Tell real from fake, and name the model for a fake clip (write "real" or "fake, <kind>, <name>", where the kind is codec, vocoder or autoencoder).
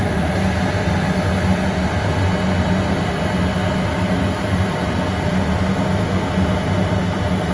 real